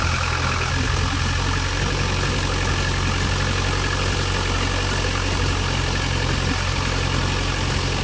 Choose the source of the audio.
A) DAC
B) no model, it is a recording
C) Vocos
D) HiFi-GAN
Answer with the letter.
B